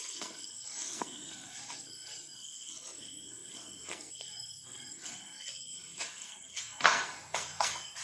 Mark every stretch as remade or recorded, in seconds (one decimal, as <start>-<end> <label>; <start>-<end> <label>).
0.0-8.0 remade